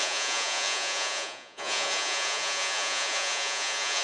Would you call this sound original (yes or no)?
no